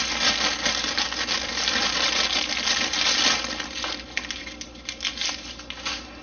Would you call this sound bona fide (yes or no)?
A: yes